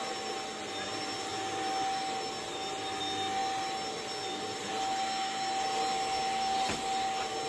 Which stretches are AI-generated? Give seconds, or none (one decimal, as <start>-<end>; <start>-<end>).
none